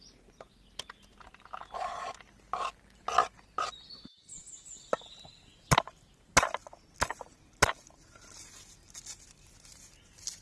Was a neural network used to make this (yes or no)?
no